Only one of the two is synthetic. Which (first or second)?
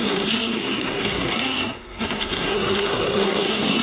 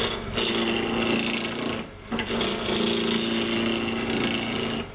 first